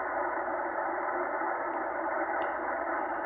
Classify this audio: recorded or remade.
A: remade